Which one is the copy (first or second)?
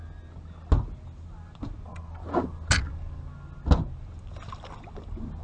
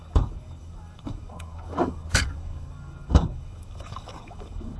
second